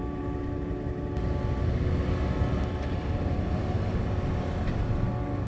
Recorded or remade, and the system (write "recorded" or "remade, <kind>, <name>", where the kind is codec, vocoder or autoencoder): recorded